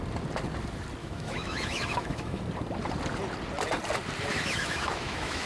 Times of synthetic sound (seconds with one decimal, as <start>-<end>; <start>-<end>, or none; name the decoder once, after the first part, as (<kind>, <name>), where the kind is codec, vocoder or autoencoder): 1.0-2.4 (autoencoder, DAC-VAE); 4.3-5.5